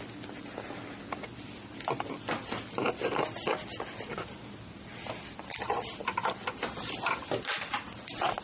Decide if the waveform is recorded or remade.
recorded